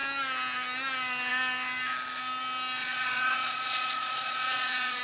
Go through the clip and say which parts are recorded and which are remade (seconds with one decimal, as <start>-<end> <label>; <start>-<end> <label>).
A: 0.0-2.8 recorded; 2.8-5.0 remade